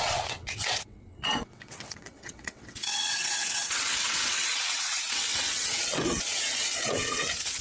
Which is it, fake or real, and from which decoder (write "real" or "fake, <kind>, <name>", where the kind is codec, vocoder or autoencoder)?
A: fake, vocoder, WaveNeXt